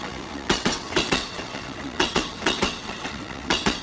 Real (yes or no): no